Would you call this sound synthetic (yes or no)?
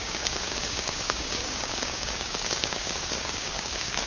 yes